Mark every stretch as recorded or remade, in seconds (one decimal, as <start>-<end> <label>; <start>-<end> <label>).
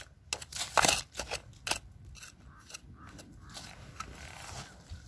0.0-5.1 recorded